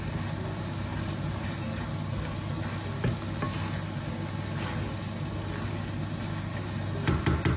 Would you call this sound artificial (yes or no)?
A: no